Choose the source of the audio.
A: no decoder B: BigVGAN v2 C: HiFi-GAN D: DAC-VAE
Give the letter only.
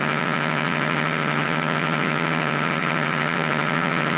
C